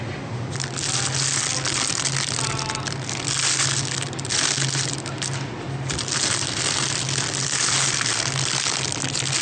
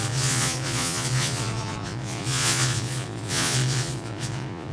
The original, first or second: first